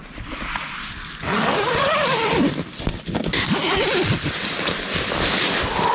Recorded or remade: recorded